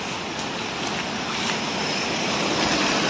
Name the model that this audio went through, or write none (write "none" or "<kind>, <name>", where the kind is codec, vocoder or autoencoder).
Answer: none